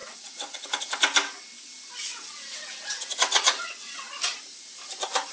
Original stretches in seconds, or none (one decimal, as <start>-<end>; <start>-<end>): 0.8-2.1; 4.1-5.3